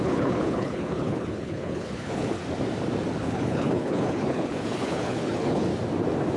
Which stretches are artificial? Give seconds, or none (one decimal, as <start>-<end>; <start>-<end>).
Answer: 0.0-2.4; 3.2-5.7